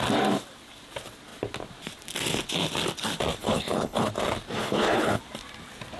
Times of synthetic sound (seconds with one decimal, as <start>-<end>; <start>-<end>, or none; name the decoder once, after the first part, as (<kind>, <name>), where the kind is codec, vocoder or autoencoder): 3.4-4.1 (codec, HILCodec); 4.6-5.2